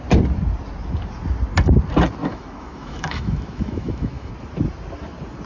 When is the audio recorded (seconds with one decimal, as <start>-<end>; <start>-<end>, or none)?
0.0-2.2; 4.3-5.5